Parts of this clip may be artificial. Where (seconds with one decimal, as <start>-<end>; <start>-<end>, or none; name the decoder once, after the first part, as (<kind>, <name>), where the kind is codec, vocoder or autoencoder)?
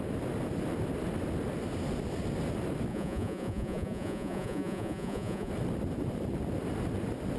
2.9-5.5 (vocoder, Vocos)